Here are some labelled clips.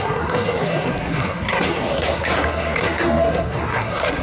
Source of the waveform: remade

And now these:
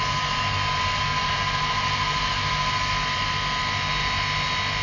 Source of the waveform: recorded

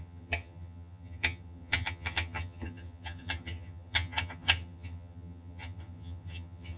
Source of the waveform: remade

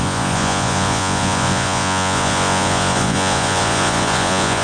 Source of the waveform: remade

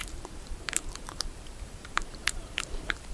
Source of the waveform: remade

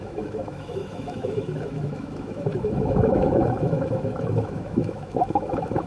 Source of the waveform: remade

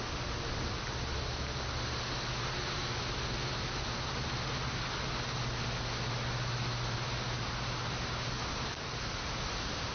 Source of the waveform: recorded